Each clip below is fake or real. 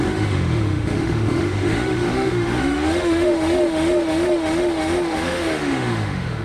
fake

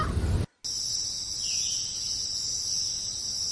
real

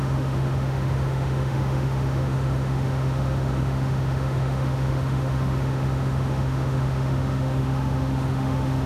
fake